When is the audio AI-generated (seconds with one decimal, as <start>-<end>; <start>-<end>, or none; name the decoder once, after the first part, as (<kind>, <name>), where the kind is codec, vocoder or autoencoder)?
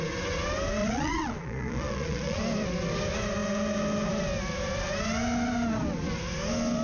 0.8-2.4 (vocoder, Vocos)